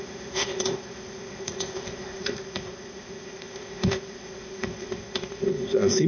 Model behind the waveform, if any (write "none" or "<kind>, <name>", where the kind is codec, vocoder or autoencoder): codec, ZipCodec